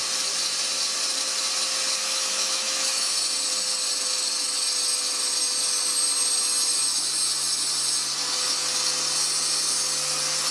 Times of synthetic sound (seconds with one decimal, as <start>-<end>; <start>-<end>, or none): 2.0-3.1